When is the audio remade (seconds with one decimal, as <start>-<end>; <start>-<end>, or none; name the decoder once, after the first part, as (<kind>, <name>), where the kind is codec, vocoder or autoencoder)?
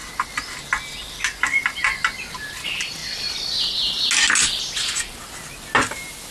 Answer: none